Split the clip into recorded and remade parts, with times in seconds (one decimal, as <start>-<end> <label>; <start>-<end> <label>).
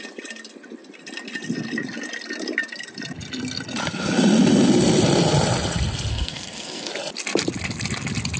0.0-6.1 recorded; 6.1-6.9 remade; 6.9-8.4 recorded